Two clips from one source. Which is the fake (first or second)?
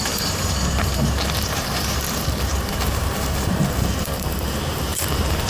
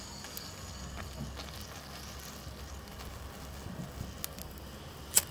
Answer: first